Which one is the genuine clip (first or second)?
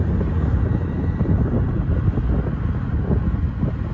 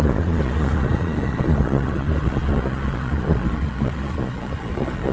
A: first